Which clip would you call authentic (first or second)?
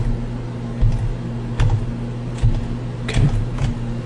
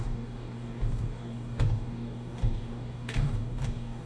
first